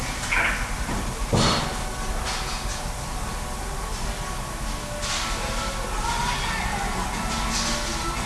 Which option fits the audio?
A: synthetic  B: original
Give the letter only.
B